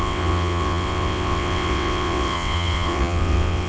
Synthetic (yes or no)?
yes